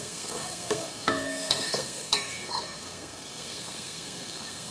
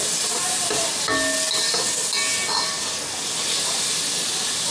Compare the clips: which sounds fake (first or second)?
first